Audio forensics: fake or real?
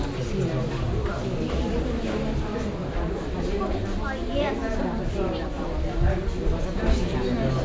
real